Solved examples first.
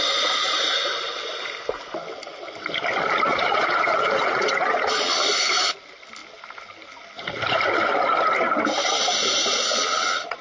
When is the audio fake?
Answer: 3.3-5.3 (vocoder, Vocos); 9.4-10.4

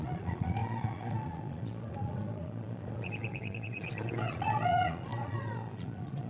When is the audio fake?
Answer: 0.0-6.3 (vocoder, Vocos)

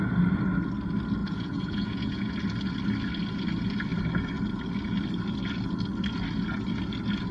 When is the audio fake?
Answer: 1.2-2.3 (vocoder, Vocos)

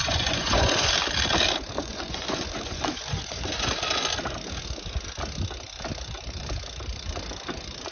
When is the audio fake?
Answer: 0.0-0.9 (vocoder, Vocos); 1.8-3.7

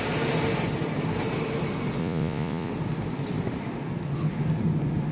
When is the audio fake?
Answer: 2.0-2.7 (vocoder, Vocos)